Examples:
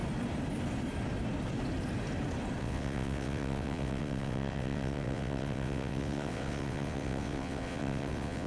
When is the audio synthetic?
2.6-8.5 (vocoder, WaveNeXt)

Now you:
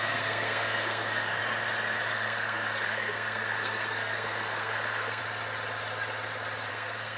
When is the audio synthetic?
0.0-1.4 (codec, SNAC); 2.1-5.2; 6.7-7.2

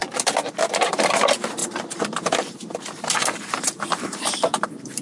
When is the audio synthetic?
0.9-5.0 (vocoder, BigVGAN v2)

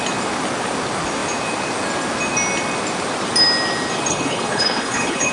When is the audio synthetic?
4.1-5.3 (codec, HILCodec)

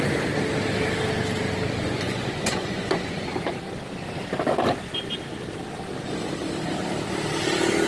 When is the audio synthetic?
1.8-3.6 (vocoder, Vocos)

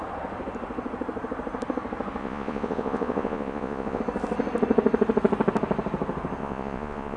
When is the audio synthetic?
2.2-4.0 (vocoder, Vocos); 6.4-7.2